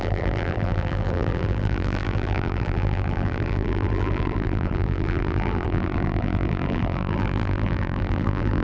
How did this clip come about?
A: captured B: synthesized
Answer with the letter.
B